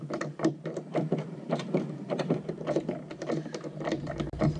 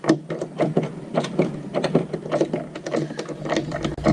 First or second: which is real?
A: second